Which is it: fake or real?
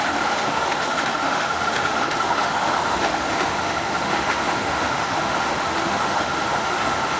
fake